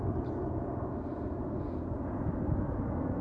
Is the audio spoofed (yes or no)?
no